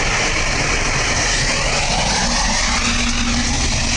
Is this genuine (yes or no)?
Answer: yes